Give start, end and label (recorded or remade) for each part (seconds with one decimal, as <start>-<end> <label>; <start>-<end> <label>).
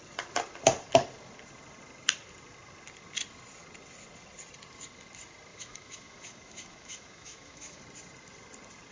0.0-5.5 recorded; 5.5-7.8 remade; 7.8-8.9 recorded